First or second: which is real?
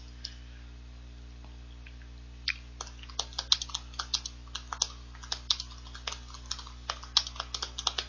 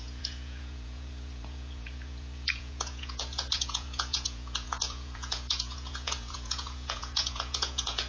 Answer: first